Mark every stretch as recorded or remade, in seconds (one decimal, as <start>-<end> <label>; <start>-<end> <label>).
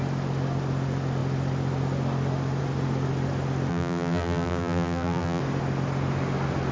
0.0-3.7 recorded; 3.7-5.4 remade; 5.4-6.7 recorded